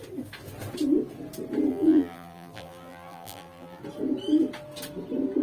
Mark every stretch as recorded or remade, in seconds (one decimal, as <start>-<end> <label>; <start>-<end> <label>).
0.0-1.7 recorded; 1.7-3.8 remade; 3.8-5.4 recorded